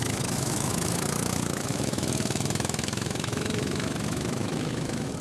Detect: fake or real fake